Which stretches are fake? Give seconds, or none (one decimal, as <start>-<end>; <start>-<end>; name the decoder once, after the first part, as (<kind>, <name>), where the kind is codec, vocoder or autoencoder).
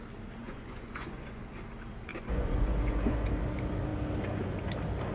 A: 0.4-1.4 (vocoder, Vocos); 2.1-3.3